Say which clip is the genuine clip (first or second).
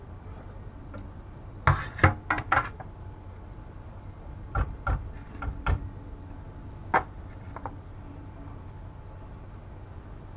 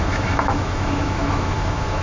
first